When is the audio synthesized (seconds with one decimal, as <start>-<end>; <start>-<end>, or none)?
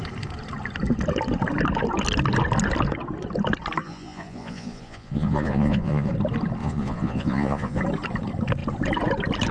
3.8-6.1; 6.6-7.8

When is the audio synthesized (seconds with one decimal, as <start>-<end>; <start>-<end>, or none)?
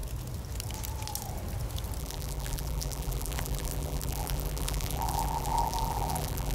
2.0-6.5